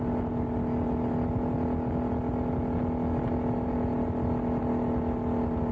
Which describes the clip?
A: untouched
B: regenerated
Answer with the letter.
A